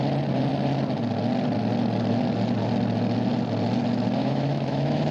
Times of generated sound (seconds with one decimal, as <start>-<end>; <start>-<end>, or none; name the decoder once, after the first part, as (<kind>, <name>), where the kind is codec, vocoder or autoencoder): 4.2-5.1 (autoencoder, DAC-VAE)